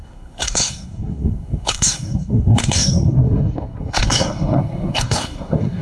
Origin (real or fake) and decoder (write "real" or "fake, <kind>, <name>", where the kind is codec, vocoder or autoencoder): fake, codec, SNAC